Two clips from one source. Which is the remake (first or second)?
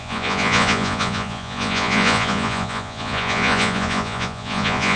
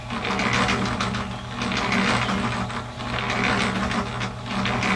first